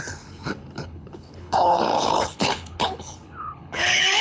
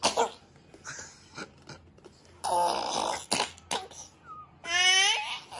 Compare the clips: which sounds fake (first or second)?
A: first